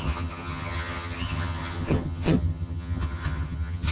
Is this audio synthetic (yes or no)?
yes